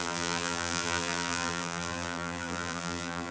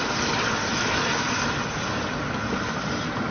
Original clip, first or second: second